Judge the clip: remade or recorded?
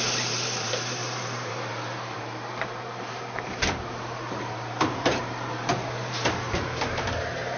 remade